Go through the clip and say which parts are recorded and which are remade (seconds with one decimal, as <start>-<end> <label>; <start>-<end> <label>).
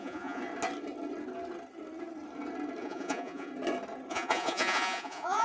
0.0-0.4 remade; 0.4-2.8 recorded; 2.8-3.5 remade; 3.5-4.1 recorded; 4.1-5.4 remade